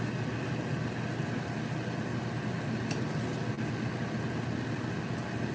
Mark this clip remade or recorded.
recorded